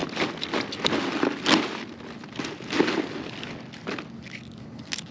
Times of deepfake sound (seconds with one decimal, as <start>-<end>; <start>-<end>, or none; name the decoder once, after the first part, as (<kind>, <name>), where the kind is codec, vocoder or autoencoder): none